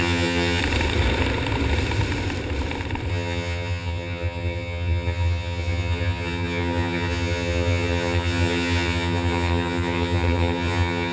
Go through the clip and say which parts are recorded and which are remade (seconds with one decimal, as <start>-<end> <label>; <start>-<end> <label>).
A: 0.0-0.6 remade; 0.6-3.1 recorded; 3.1-11.1 remade